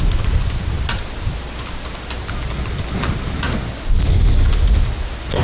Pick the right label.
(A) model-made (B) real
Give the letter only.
B